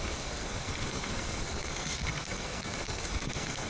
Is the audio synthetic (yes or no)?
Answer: yes